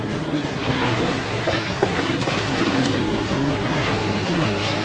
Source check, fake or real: fake